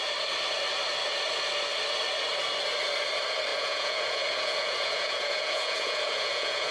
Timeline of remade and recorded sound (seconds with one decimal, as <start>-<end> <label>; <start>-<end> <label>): 0.0-3.5 recorded; 3.5-6.7 remade